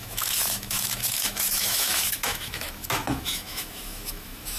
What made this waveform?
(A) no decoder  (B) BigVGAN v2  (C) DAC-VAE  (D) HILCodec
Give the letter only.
C